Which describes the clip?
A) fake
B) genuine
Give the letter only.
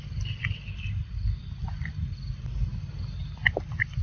B